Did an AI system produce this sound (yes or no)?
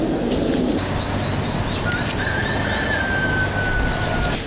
no